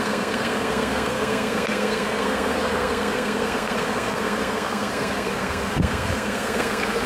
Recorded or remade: remade